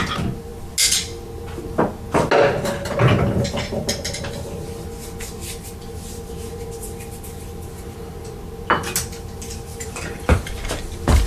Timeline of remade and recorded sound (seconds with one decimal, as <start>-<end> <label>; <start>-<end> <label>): 0.0-9.7 recorded; 9.7-10.5 remade; 10.5-11.3 recorded